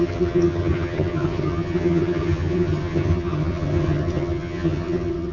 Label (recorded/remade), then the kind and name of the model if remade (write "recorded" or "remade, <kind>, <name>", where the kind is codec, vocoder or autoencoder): remade, vocoder, HiFi-GAN